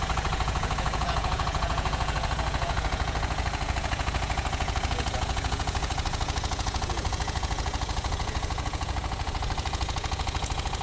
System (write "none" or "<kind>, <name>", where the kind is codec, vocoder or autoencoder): vocoder, Vocos